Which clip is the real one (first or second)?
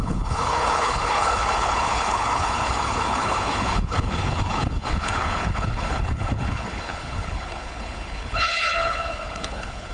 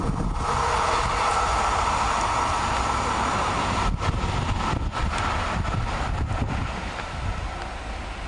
second